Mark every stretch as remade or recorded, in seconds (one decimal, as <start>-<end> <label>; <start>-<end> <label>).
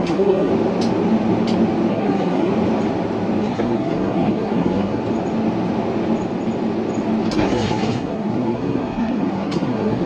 0.0-0.5 remade; 0.5-1.9 recorded; 1.9-2.5 remade; 2.5-3.4 recorded; 3.4-5.0 remade; 5.0-7.3 recorded; 7.3-10.1 remade